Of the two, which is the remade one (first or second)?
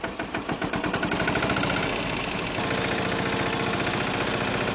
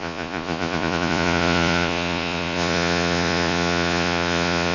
second